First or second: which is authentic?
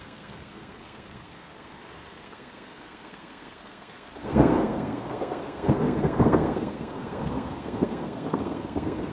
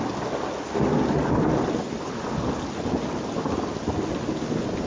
second